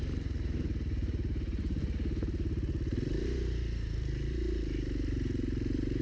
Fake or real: fake